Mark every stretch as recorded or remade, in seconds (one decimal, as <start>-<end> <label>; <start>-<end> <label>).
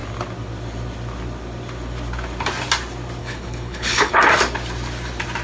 0.0-3.2 recorded; 3.2-4.1 remade; 4.1-5.4 recorded